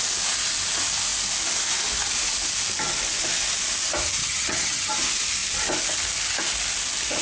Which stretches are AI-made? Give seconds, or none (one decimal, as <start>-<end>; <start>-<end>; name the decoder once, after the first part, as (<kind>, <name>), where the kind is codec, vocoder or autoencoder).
4.2-4.9 (vocoder, HiFi-GAN)